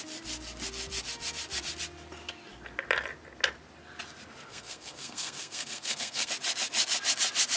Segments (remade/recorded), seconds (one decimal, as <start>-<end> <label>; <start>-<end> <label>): 0.0-4.5 recorded; 4.5-6.3 remade; 6.3-7.6 recorded